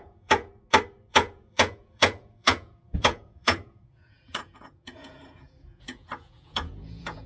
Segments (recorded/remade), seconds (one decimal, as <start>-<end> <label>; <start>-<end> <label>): 0.0-0.5 remade; 0.5-1.1 recorded; 1.1-7.3 remade